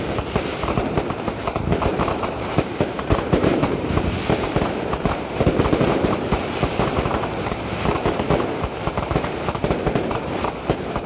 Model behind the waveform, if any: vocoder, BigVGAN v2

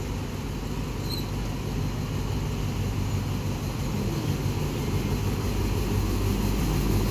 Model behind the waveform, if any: none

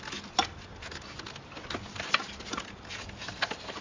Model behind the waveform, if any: none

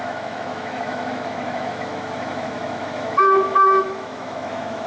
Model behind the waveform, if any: autoencoder, DAC-VAE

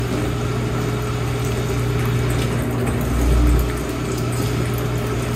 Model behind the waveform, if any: none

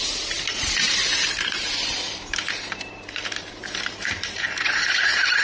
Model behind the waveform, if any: vocoder, BigVGAN v2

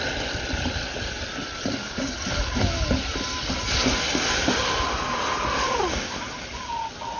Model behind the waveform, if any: none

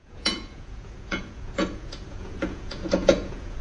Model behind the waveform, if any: vocoder, Vocos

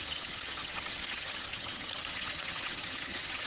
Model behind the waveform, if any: vocoder, HiFi-GAN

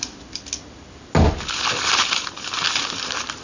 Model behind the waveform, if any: none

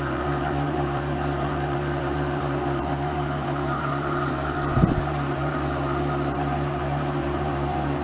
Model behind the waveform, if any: vocoder, BigVGAN v2